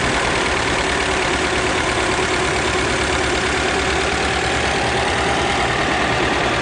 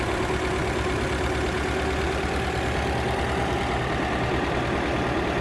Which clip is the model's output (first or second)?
first